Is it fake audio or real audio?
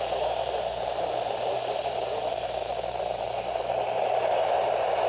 fake